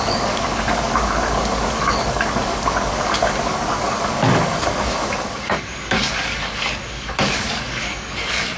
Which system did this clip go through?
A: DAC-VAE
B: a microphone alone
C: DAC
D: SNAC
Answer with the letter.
C